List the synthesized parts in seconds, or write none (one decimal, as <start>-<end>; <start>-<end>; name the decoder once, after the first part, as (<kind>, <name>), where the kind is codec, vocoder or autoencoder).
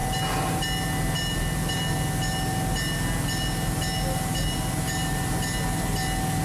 none